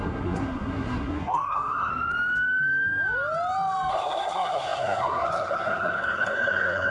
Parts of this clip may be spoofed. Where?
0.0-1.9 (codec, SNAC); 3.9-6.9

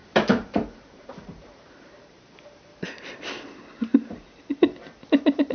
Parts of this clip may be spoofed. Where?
0.0-3.3 (vocoder, BigVGAN v2); 3.9-4.5

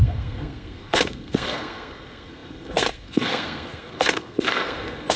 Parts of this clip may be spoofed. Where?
0.0-5.2 (codec, SNAC)

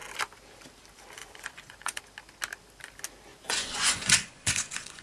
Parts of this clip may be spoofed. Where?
1.2-2.0 (vocoder, Vocos); 3.3-5.0

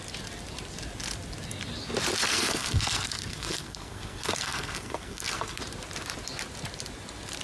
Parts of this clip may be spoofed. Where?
2.3-5.6 (codec, SNAC)

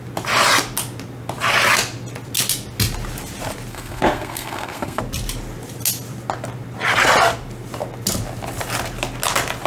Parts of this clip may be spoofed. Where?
3.7-5.0 (codec, SNAC)

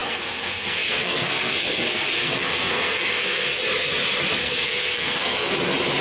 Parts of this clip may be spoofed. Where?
0.0-3.6 (codec, SNAC); 4.4-5.5